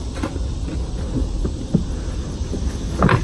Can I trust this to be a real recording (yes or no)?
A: yes